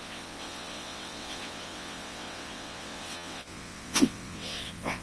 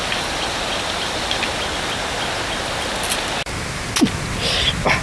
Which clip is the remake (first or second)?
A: first